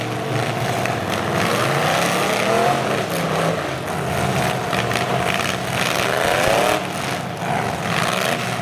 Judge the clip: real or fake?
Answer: real